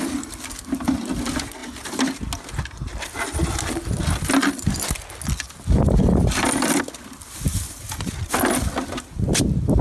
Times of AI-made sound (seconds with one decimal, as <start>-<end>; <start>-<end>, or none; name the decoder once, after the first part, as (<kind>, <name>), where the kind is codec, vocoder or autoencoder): 7.5-8.1 (vocoder, BigVGAN v2)